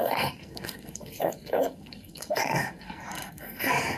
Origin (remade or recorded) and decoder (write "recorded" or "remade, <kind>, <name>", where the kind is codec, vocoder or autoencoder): remade, codec, SNAC